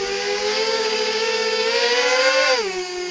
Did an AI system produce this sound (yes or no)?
yes